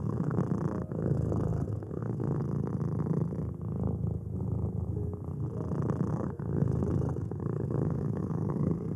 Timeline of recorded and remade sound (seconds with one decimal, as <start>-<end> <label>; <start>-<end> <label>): 0.0-0.4 remade; 0.4-0.9 recorded; 0.9-2.4 remade; 2.4-6.1 recorded; 6.1-9.0 remade